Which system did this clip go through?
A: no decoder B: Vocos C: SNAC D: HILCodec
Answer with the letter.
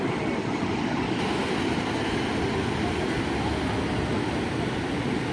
A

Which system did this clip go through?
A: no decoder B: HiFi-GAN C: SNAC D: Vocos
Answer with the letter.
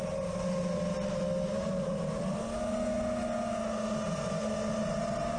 A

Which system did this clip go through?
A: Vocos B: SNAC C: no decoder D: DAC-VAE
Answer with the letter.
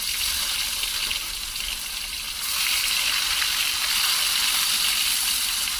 C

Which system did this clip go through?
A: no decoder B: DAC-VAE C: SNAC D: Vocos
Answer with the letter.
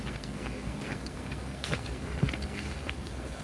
C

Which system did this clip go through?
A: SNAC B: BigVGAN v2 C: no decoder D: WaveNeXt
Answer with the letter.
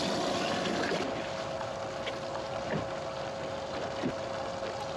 C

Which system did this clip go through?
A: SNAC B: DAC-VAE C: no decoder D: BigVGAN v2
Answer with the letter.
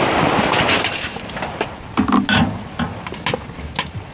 C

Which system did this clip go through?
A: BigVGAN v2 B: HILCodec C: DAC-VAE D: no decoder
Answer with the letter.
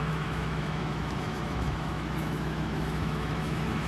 C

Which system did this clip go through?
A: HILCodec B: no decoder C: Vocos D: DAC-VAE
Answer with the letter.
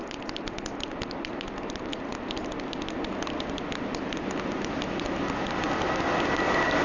B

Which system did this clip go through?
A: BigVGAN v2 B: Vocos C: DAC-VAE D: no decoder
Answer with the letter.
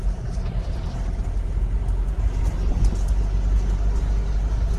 D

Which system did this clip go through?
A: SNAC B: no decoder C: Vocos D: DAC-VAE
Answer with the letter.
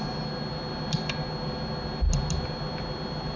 B